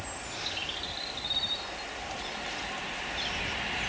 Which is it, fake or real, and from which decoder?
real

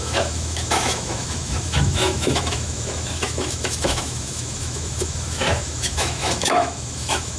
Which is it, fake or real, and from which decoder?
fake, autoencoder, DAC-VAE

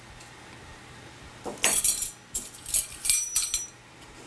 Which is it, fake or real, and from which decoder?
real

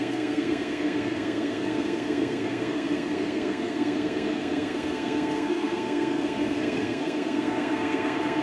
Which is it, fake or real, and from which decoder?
fake, codec, SNAC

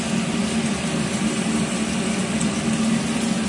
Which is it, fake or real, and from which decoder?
real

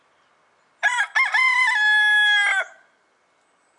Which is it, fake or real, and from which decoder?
real